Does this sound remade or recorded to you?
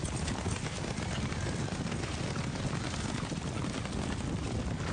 recorded